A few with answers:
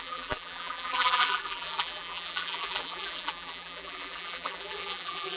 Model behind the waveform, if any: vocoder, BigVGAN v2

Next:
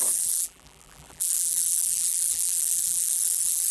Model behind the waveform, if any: vocoder, BigVGAN v2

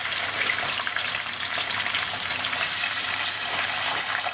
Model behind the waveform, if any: vocoder, BigVGAN v2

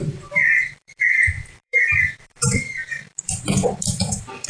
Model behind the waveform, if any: vocoder, BigVGAN v2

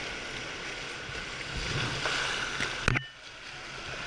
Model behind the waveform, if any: none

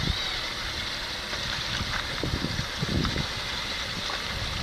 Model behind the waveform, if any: none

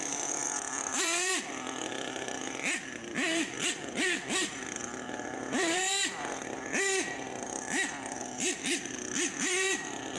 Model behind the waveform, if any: vocoder, BigVGAN v2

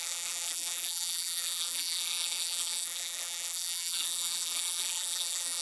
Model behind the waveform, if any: vocoder, BigVGAN v2